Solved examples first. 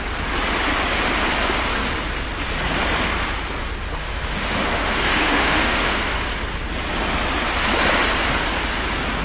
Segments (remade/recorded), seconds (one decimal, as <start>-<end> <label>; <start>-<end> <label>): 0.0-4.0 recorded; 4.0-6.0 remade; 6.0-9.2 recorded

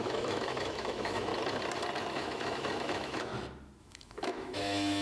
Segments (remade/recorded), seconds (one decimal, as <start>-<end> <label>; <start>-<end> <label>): 0.0-1.3 remade; 1.3-2.1 recorded; 2.1-3.3 remade; 3.3-3.8 recorded; 3.8-5.0 remade

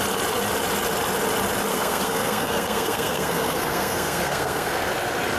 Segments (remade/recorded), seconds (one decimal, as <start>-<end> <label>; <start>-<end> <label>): 0.0-1.7 recorded; 1.7-4.9 remade; 4.9-5.4 recorded

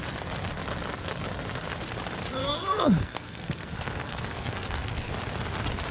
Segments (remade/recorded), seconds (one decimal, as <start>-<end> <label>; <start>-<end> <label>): 0.0-2.4 recorded; 2.4-5.1 remade; 5.1-5.9 recorded

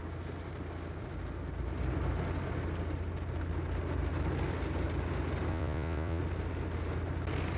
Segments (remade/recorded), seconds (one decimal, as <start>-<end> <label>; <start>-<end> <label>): 0.0-5.5 recorded; 5.5-6.2 remade; 6.2-7.6 recorded

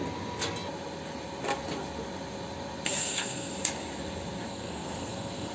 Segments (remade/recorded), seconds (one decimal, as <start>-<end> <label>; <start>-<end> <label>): 0.0-3.0 recorded; 3.0-3.5 remade; 3.5-4.5 recorded; 4.5-5.5 remade